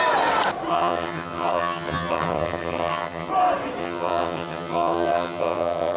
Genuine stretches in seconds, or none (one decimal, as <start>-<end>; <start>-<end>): 0.0-0.7; 3.3-3.8